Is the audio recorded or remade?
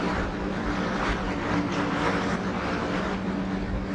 recorded